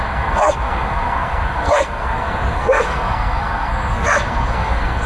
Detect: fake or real fake